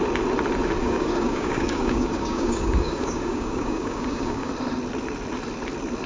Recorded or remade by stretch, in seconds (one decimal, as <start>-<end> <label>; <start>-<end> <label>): 0.0-0.8 recorded; 0.8-4.5 remade; 4.5-6.1 recorded